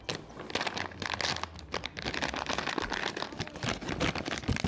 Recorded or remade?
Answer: recorded